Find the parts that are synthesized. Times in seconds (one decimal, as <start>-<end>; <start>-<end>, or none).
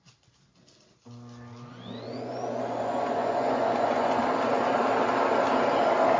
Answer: 1.7-4.2